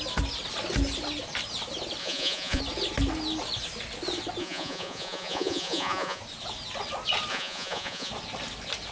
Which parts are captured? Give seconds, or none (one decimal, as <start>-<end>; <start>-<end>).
0.0-2.0; 2.6-4.4; 6.2-7.3; 8.1-8.9